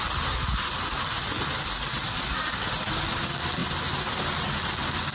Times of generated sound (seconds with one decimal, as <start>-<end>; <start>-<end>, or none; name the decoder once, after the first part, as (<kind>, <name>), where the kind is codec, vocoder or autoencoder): none